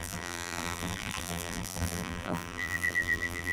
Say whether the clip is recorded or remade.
remade